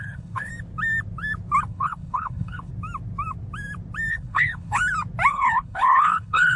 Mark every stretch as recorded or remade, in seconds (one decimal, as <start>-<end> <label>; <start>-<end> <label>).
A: 0.0-0.5 remade; 0.5-1.6 recorded; 1.6-2.7 remade; 2.7-4.1 recorded; 4.1-4.8 remade; 4.8-5.3 recorded; 5.3-6.6 remade